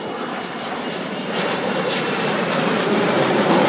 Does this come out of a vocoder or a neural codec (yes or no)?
yes